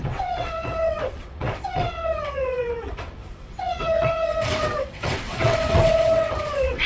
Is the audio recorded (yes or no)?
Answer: no